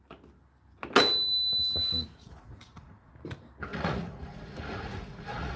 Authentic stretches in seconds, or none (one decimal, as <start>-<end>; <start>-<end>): 0.0-1.9; 3.1-3.7